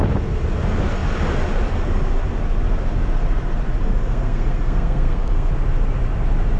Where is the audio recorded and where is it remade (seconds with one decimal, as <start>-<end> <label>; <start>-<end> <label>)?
0.0-3.8 recorded; 3.8-5.5 remade; 5.5-6.6 recorded